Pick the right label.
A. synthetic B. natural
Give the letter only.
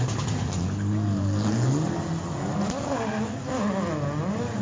B